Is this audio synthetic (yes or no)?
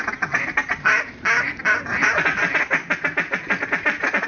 no